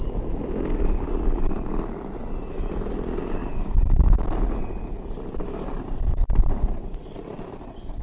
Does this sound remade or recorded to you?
recorded